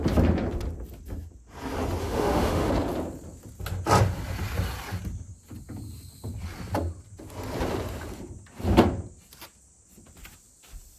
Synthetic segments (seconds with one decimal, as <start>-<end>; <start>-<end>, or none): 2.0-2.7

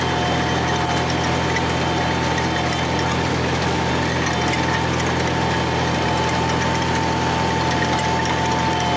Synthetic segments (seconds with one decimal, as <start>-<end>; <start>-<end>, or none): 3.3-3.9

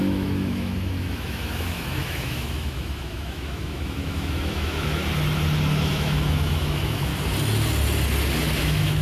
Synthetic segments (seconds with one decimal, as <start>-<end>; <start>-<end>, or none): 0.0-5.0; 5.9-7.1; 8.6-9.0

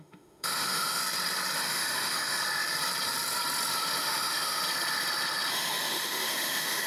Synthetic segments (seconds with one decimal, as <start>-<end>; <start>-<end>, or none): 0.0-1.0; 1.6-2.4; 4.0-4.6; 5.5-6.9

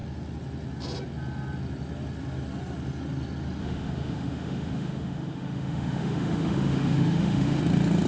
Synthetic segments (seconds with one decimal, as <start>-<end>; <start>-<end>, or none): 3.6-7.6

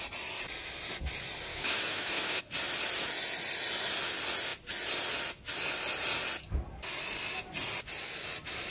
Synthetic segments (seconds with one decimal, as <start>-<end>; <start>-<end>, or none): 1.5-2.4

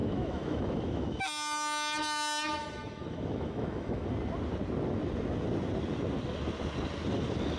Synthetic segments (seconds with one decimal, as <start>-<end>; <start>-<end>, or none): 0.0-1.2; 2.6-4.1

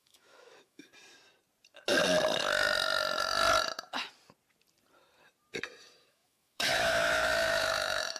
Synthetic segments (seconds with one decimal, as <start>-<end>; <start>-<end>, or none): 0.0-0.9; 5.8-8.2